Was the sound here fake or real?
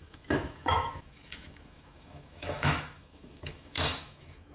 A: fake